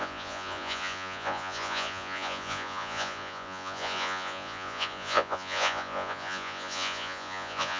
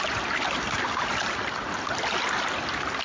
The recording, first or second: second